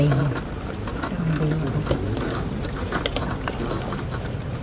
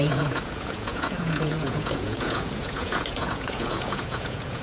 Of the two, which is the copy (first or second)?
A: second